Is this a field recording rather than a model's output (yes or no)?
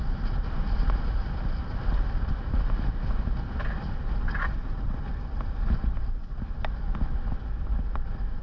yes